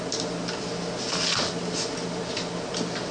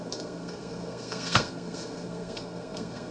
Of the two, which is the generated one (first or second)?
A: second